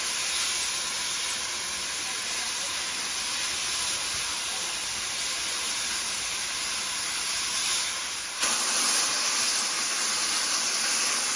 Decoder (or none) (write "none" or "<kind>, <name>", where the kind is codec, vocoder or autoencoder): none